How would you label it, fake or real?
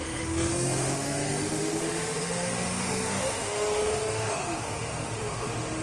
fake